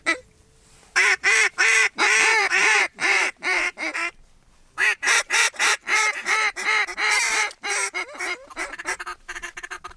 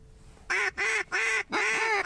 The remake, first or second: first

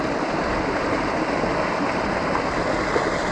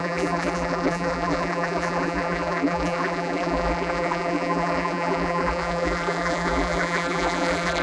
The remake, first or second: second